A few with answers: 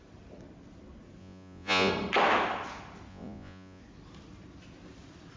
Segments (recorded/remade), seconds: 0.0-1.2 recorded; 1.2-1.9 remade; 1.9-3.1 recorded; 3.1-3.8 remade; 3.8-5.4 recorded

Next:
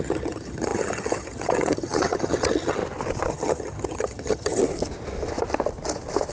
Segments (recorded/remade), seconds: 0.0-2.8 remade; 2.8-3.3 recorded; 3.3-4.6 remade; 4.6-6.3 recorded

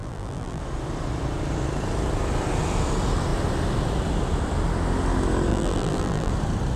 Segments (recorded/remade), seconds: 0.0-0.6 remade; 0.6-5.5 recorded; 5.5-6.3 remade; 6.3-6.8 recorded

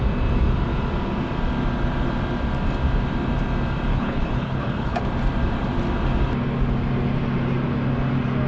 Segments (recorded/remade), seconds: 0.0-3.9 recorded; 3.9-5.0 remade; 5.0-8.5 recorded

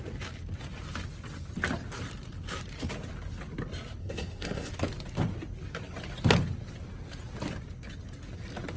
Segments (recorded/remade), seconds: 0.0-4.0 recorded; 4.0-4.7 remade; 4.7-8.8 recorded

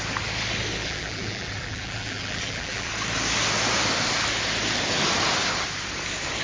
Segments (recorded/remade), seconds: 0.0-0.8 recorded; 0.8-2.9 remade; 2.9-6.4 recorded

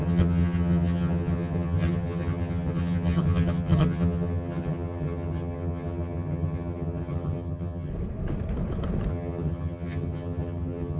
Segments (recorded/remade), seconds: 0.0-7.9 remade; 7.9-9.1 recorded; 9.1-11.0 remade